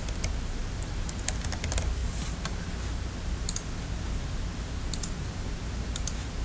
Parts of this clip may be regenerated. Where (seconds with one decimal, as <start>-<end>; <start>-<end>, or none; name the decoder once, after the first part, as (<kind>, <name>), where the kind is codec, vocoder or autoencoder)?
none